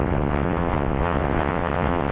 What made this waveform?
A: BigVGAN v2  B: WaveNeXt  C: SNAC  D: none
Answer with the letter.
B